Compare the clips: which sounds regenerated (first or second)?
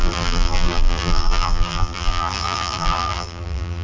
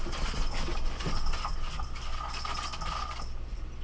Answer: first